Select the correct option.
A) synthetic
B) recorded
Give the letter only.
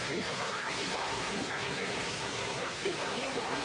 A